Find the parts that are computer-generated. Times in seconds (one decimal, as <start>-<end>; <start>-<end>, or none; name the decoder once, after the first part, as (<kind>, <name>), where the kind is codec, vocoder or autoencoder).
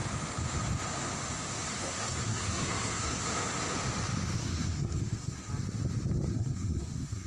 1.7-3.2 (codec, SNAC); 4.4-5.5; 6.3-7.3